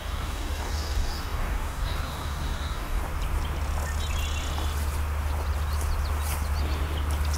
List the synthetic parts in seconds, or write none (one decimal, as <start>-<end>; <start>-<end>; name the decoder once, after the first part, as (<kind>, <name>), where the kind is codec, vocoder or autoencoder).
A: 0.0-3.0 (codec, DAC)